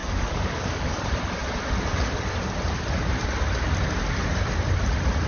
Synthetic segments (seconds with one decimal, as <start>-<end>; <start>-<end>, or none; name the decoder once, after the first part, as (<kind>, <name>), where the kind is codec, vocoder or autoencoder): 0.0-0.9 (codec, DAC)